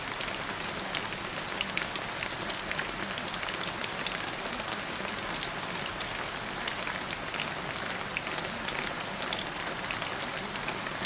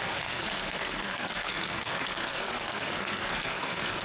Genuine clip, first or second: first